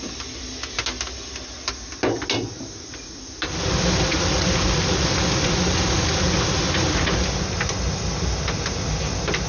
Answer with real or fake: real